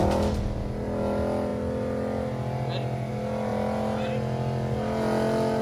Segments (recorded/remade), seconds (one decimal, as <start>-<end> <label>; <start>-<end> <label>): 0.0-5.6 recorded